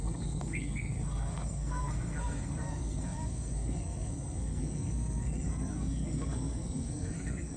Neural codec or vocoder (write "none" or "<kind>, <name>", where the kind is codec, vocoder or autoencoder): codec, SNAC